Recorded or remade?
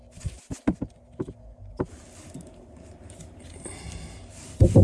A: recorded